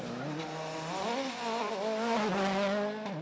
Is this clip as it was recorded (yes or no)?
yes